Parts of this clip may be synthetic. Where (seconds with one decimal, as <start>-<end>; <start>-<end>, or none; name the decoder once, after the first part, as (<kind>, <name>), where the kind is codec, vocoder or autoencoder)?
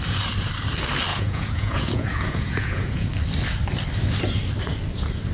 1.1-3.1 (vocoder, Vocos)